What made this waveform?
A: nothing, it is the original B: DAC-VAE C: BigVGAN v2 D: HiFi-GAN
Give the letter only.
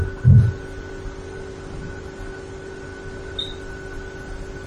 A